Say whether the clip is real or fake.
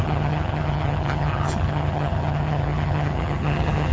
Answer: fake